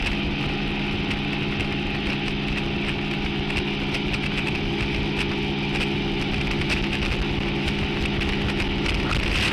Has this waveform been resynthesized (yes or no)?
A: no